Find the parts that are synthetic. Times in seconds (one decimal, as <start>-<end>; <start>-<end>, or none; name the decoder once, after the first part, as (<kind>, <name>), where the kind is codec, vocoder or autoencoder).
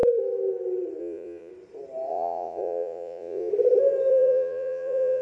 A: 1.0-1.5 (vocoder, Vocos); 2.1-3.5; 4.1-5.2